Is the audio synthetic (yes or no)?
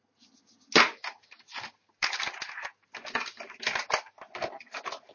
no